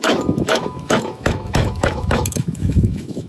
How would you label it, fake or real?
fake